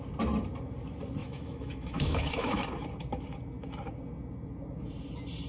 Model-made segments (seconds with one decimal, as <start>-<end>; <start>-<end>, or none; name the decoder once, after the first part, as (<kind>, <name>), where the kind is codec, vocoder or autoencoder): 1.2-2.7 (autoencoder, DAC-VAE)